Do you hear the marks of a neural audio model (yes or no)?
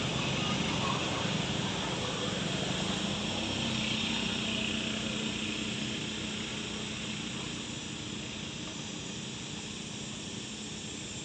no